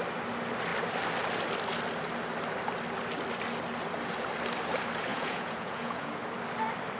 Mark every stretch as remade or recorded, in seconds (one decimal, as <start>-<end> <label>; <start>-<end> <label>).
0.0-5.1 recorded; 5.1-6.2 remade; 6.2-7.0 recorded